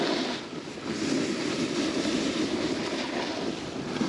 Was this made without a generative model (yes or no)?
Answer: yes